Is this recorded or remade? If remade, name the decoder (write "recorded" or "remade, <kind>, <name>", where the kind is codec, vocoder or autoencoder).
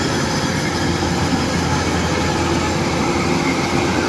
recorded